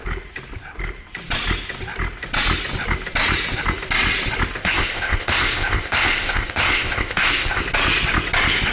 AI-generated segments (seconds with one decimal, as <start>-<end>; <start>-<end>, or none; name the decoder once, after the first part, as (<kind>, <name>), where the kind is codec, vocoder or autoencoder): 4.6-7.6 (codec, ZipCodec)